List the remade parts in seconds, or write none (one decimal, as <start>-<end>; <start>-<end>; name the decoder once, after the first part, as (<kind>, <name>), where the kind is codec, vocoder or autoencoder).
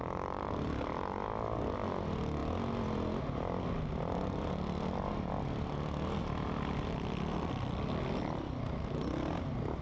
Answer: none